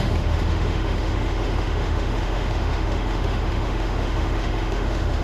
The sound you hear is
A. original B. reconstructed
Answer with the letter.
B